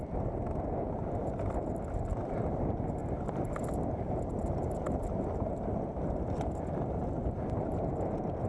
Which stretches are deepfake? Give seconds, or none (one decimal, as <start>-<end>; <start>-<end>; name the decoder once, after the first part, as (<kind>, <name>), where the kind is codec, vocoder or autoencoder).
none